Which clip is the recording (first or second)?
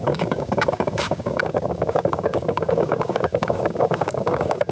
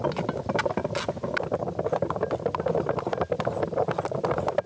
second